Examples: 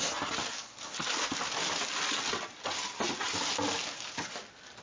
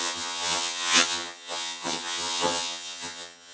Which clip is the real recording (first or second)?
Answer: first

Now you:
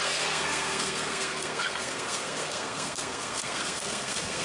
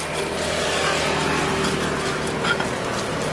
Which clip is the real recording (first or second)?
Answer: second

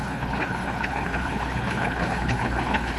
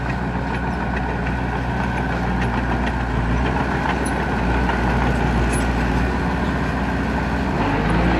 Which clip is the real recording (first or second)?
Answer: second